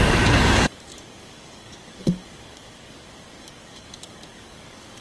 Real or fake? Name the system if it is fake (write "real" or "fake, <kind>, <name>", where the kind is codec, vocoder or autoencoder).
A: fake, codec, DAC